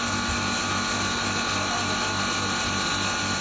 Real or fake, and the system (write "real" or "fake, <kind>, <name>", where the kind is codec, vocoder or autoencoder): real